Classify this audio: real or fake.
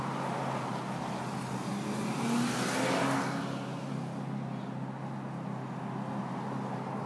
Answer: real